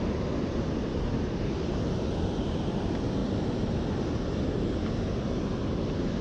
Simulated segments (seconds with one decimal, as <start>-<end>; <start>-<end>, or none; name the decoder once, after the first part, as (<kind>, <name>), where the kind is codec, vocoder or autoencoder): 0.9-2.5 (vocoder, BigVGAN v2)